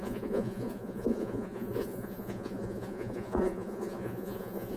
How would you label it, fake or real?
fake